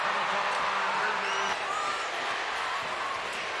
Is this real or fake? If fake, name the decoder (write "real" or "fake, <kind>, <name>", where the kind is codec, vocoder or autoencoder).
real